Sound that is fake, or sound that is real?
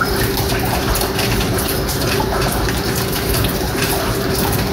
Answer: fake